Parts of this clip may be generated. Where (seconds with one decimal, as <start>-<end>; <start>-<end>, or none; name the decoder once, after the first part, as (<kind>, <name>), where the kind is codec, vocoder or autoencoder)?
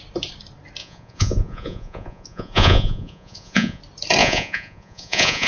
0.8-3.8 (vocoder, Vocos); 4.2-5.5